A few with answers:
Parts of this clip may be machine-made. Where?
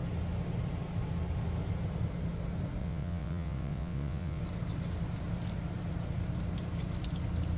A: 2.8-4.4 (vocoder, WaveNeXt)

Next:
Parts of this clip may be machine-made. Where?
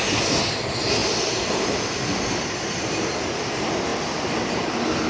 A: none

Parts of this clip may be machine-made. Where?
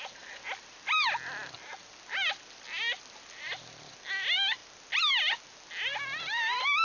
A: none